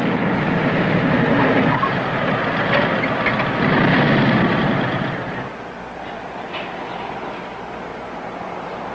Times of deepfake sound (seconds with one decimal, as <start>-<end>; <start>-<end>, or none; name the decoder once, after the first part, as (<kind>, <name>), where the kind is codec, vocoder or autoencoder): 7.9-8.5 (vocoder, Vocos)